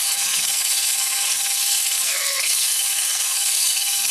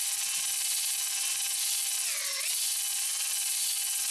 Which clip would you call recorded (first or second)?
second